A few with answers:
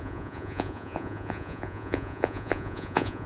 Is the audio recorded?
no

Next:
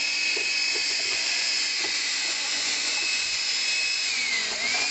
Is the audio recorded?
no